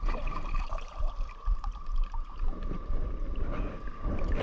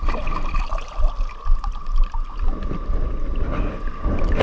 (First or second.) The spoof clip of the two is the first